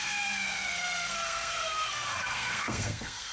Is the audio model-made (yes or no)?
yes